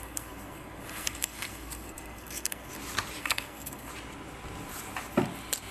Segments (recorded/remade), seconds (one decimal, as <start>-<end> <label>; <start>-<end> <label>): 0.0-2.7 remade; 2.7-3.2 recorded; 3.2-3.9 remade; 3.9-5.7 recorded

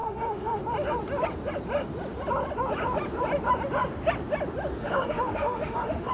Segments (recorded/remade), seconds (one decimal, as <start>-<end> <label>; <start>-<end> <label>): 0.0-0.6 remade; 0.6-4.8 recorded; 4.8-6.1 remade

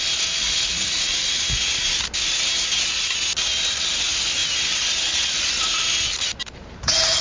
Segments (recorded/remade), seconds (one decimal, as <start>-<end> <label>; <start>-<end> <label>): 0.0-7.2 recorded

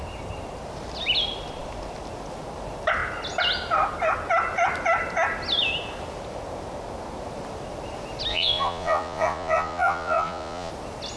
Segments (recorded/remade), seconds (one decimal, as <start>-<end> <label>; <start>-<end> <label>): 0.0-8.3 recorded; 8.3-10.7 remade; 10.7-11.2 recorded